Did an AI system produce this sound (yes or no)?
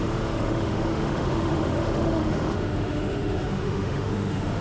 yes